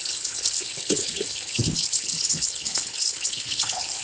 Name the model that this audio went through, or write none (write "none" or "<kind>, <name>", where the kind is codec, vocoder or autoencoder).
codec, HILCodec